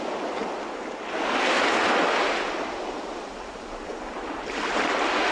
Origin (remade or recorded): recorded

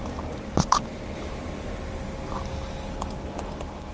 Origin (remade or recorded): recorded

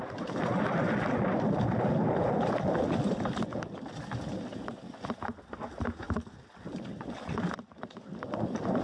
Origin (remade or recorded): recorded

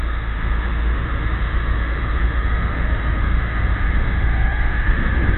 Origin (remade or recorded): remade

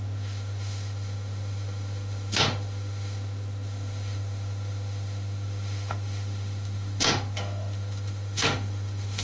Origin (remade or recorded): remade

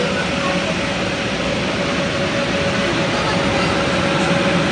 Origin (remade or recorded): recorded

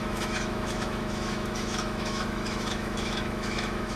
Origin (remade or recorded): remade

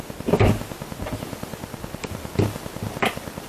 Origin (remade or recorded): recorded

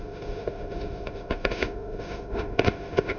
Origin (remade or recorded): remade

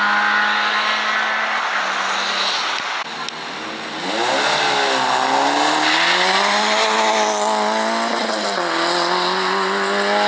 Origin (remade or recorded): recorded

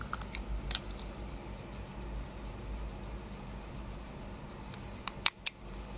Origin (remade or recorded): recorded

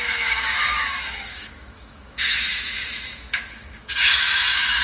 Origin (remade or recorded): remade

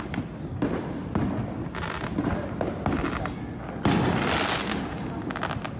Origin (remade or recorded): recorded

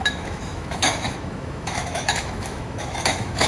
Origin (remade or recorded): remade